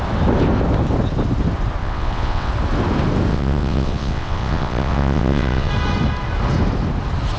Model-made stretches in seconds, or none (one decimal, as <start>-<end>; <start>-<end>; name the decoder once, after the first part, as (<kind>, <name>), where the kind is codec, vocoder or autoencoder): 1.8-2.5 (vocoder, WaveNeXt); 3.3-5.7